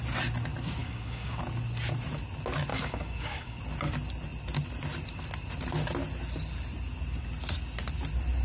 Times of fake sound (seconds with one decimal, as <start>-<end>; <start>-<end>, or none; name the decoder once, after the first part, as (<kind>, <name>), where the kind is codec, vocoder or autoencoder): 0.8-1.4 (codec, DAC); 2.7-3.6